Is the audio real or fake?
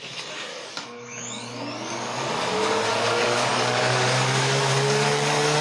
fake